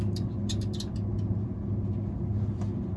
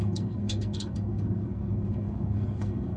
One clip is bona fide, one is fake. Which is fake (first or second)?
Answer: second